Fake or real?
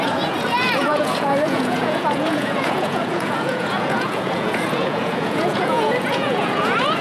fake